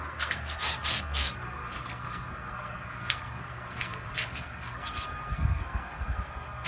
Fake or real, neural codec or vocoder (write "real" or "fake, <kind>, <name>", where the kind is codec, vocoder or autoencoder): fake, codec, SNAC